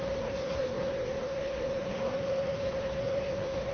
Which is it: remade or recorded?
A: remade